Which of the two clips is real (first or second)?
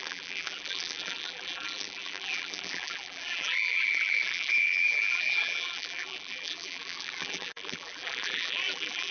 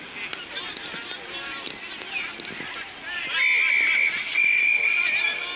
second